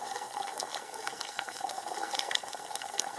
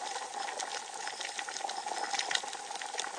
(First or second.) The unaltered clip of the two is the second